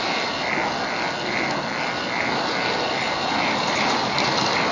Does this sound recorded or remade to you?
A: recorded